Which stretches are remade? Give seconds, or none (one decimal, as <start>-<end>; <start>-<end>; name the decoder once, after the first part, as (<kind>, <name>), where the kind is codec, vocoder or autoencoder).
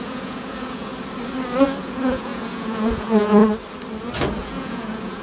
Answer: 0.0-0.9 (vocoder, Vocos); 1.8-3.4; 4.4-5.2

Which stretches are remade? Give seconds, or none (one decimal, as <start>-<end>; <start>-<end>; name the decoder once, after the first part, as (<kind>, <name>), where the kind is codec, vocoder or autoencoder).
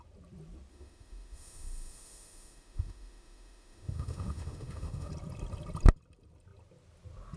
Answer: 0.7-5.1 (autoencoder, DAC-VAE)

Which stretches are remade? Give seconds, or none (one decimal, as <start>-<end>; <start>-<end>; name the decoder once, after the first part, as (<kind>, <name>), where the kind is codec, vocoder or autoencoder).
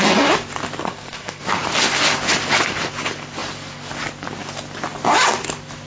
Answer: 0.8-1.4 (codec, SNAC)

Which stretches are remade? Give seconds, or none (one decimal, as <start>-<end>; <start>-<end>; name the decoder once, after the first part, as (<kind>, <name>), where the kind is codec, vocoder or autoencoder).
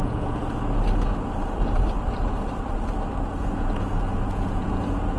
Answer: 0.0-0.4 (vocoder, Vocos); 3.4-5.2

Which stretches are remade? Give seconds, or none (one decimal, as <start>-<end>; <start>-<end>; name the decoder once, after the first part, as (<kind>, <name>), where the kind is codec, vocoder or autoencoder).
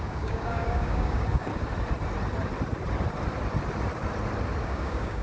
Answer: 0.0-1.5 (codec, DAC); 4.6-5.2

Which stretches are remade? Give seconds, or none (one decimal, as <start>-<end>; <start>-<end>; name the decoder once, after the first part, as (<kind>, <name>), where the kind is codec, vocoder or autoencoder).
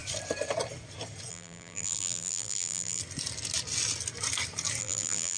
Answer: 1.3-3.0 (vocoder, BigVGAN v2); 4.8-5.4